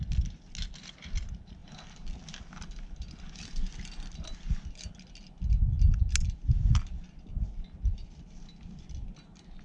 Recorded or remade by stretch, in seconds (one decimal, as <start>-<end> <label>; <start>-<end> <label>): 0.0-9.6 recorded